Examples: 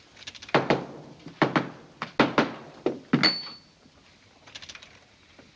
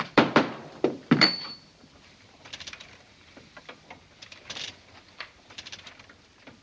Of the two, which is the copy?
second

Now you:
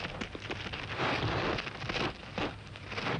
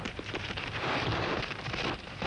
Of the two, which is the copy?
second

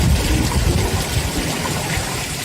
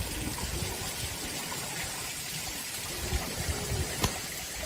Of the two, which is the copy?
second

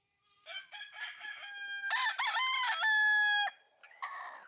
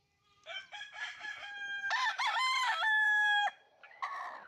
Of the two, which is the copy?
second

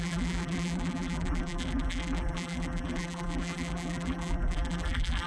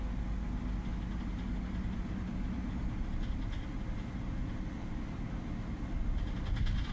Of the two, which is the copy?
first